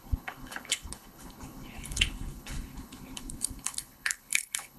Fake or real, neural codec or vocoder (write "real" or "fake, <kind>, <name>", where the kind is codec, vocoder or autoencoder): fake, codec, HILCodec